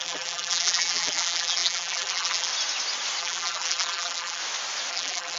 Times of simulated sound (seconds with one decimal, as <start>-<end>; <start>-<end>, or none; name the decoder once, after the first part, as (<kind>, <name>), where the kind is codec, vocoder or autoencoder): 0.0-2.5 (vocoder, BigVGAN v2); 3.2-4.4; 4.9-5.4